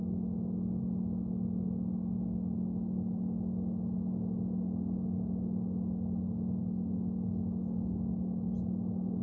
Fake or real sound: real